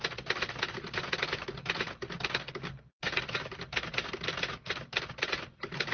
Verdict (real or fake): real